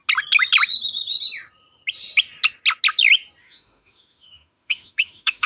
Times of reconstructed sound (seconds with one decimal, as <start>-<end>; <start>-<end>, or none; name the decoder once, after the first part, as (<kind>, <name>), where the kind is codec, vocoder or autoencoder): 3.4-5.5 (autoencoder, DAC-VAE)